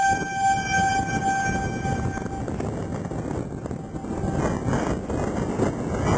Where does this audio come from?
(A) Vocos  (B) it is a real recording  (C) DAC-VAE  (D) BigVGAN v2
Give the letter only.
B